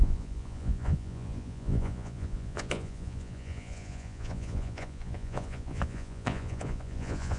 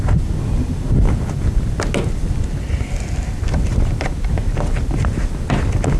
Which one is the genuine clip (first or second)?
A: second